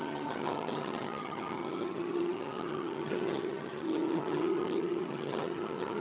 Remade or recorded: remade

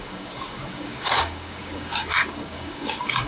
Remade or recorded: remade